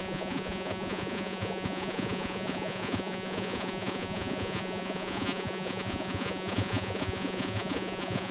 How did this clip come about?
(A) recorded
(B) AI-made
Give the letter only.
B